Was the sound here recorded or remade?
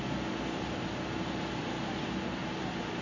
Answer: recorded